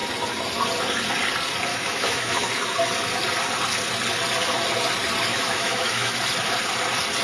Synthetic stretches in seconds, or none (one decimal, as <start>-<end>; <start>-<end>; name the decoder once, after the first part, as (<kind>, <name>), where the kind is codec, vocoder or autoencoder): 1.7-2.5 (autoencoder, DAC-VAE); 5.3-6.1